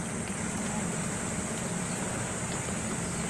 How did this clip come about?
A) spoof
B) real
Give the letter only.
B